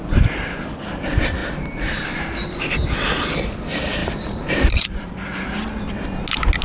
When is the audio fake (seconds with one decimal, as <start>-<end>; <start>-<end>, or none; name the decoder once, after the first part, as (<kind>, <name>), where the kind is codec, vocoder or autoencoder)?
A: 1.4-2.6 (vocoder, BigVGAN v2); 4.0-5.1